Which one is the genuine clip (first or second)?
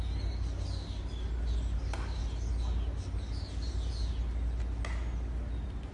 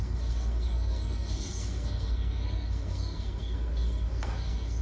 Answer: first